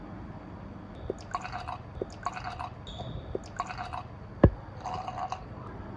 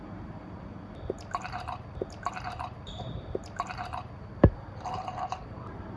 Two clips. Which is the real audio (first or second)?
first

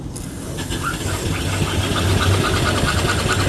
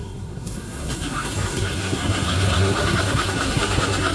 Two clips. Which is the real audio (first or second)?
first